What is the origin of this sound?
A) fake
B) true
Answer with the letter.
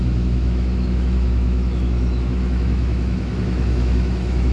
A